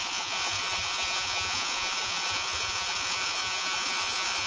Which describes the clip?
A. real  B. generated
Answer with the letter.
B